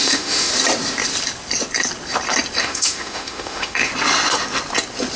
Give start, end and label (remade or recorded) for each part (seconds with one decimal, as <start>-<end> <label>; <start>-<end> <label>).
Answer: 0.0-0.5 remade; 0.5-2.6 recorded; 2.6-3.9 remade; 3.9-5.2 recorded